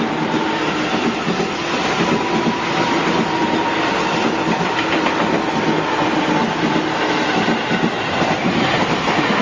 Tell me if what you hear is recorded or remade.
recorded